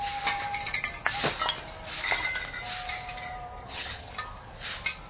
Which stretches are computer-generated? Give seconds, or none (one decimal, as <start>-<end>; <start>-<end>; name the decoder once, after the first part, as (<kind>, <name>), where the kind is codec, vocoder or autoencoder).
3.6-4.1 (vocoder, HiFi-GAN)